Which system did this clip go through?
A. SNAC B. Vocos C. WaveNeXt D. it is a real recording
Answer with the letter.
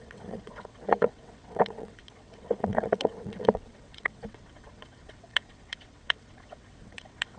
C